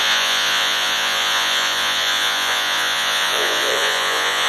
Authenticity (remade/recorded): remade